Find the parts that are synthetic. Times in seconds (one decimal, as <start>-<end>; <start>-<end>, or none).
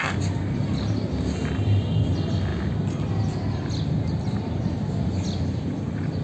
none